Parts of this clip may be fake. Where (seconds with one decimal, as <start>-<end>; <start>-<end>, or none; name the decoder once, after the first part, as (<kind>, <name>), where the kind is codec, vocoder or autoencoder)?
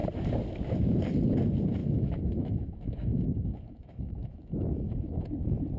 1.8-5.3 (autoencoder, DAC-VAE)